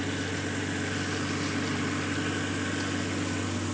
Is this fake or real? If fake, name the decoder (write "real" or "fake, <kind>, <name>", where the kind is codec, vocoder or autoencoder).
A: real